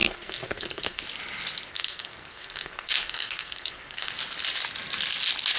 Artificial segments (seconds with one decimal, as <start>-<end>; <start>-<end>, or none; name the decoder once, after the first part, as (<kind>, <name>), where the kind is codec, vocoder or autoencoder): 0.0-1.0 (codec, SNAC); 1.7-4.1